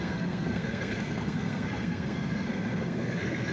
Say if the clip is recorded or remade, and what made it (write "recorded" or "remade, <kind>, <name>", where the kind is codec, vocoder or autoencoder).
remade, codec, SNAC